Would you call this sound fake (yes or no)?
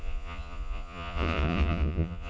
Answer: yes